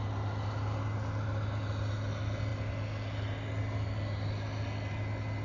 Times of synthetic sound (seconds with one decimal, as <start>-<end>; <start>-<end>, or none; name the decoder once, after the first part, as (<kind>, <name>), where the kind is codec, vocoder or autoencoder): none